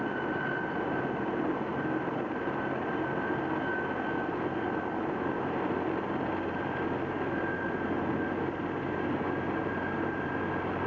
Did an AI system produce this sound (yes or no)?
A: no